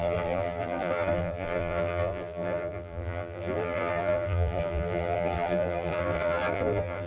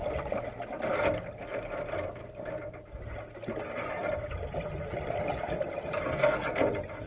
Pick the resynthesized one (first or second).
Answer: first